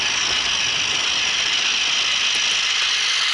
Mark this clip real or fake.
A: real